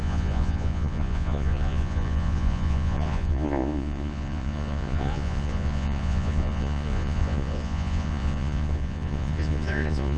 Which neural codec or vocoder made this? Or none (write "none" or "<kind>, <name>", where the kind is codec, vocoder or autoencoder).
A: vocoder, Vocos